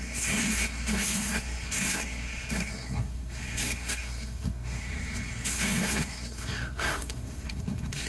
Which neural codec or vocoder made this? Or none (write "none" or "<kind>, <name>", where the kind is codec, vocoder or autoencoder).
codec, SNAC